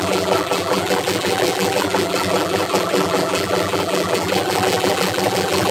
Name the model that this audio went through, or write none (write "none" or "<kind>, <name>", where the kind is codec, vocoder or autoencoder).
vocoder, BigVGAN v2